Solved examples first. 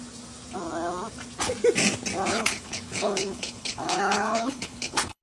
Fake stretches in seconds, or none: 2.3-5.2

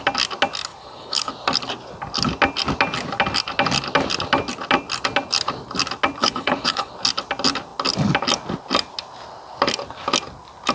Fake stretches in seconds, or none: 0.7-1.3; 6.2-6.9

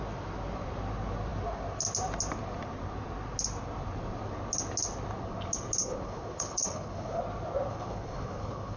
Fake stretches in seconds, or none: 5.8-7.2; 7.7-8.8

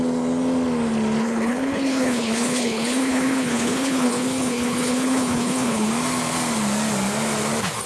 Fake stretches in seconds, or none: 1.2-5.9

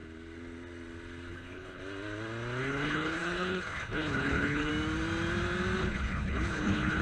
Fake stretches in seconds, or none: 1.3-1.8; 2.6-4.7; 5.8-7.0

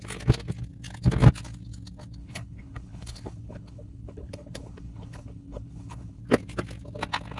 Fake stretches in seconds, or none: 2.2-6.2

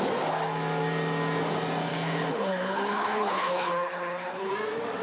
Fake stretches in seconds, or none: 1.9-4.5

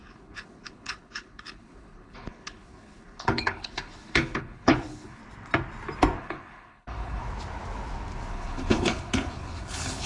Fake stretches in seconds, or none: 0.0-5.2; 6.2-7.2; 8.3-10.1